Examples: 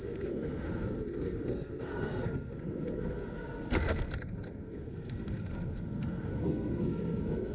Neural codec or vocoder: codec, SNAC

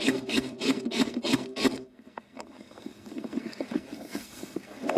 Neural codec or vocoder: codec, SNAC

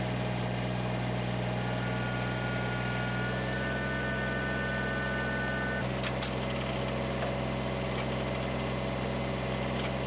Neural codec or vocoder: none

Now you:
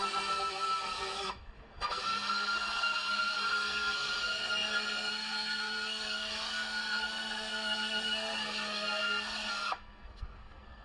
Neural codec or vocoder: codec, SNAC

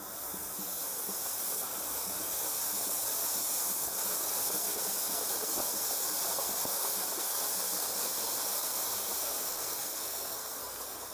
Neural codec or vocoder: codec, SNAC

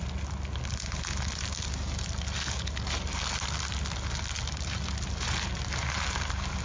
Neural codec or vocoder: none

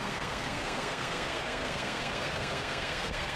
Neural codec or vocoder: codec, SNAC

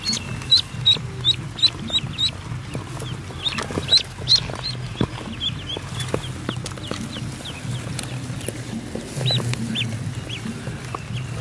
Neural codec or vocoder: none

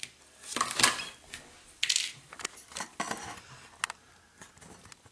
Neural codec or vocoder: none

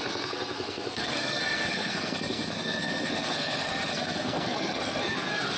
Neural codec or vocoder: codec, SNAC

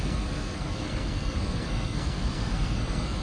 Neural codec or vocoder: codec, SNAC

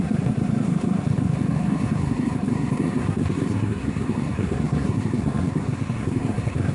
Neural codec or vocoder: codec, SNAC